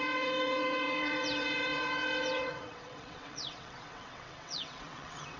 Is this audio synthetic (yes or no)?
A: yes